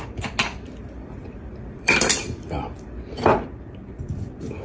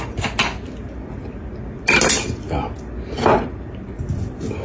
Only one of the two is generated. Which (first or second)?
first